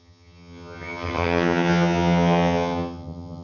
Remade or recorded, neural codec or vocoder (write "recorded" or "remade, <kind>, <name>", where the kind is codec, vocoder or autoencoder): remade, vocoder, HiFi-GAN